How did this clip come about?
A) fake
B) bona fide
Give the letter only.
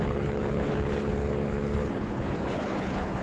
A